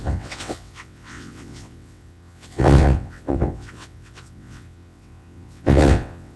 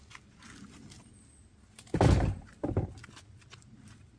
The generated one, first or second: first